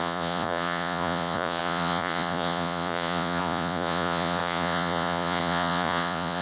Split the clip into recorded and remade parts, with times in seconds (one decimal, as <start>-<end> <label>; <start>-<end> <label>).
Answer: 0.0-6.4 remade